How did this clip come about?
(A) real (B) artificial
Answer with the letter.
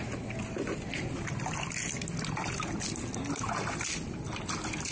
A